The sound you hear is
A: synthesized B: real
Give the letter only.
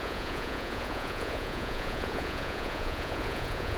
A